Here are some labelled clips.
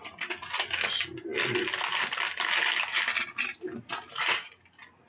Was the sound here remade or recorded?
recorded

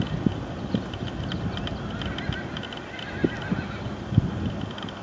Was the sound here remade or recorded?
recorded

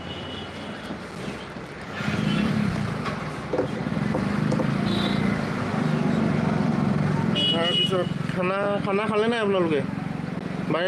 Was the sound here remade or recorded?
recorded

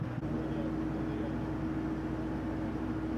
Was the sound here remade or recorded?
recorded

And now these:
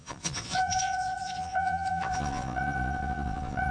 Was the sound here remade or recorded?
remade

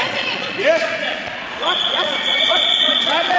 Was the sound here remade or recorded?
remade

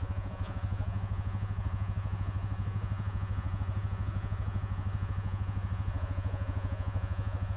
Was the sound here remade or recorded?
remade